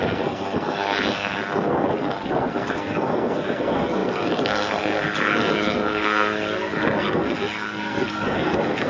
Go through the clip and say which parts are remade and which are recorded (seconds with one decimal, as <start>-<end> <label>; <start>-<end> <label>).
0.0-8.9 remade